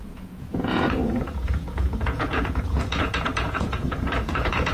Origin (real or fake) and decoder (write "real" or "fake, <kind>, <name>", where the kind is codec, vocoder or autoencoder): fake, vocoder, Vocos